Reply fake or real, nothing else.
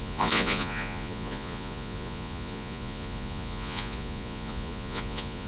fake